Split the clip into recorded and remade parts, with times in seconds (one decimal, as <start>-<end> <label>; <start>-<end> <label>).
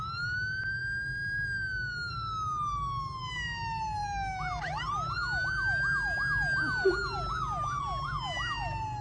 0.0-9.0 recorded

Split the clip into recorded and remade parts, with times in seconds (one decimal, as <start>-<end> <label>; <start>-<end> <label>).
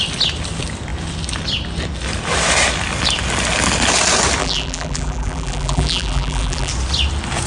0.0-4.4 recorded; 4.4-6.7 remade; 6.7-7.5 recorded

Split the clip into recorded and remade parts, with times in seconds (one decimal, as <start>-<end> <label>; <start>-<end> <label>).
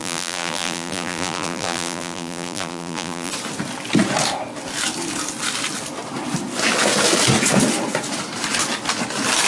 0.0-3.3 remade; 3.3-9.5 recorded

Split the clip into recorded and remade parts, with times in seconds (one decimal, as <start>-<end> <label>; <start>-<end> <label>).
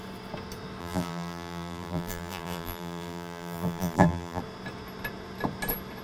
0.0-0.8 recorded; 0.8-4.4 remade; 4.4-6.0 recorded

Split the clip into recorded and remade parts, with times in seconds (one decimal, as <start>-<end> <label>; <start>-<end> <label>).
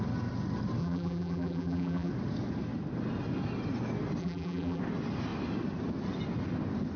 0.0-0.8 recorded; 0.8-2.1 remade; 2.1-4.2 recorded; 4.2-4.8 remade; 4.8-7.0 recorded